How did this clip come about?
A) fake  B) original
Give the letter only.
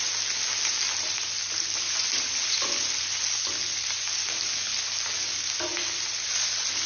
B